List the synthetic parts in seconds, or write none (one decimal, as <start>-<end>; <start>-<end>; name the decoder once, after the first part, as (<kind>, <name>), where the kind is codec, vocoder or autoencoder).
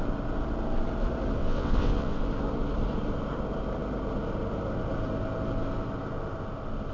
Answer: 1.4-2.2 (vocoder, WaveNeXt)